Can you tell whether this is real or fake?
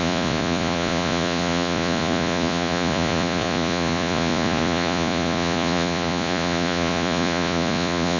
fake